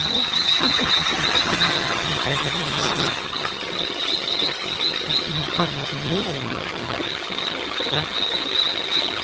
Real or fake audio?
fake